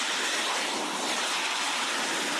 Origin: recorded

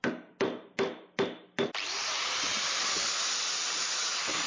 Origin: recorded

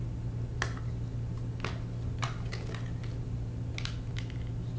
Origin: recorded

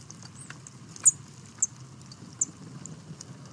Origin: recorded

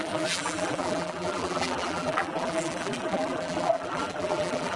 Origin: remade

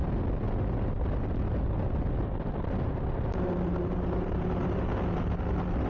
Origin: recorded